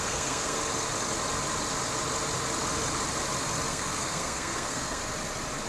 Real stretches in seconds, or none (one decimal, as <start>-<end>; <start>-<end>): 0.6-3.7; 5.0-5.7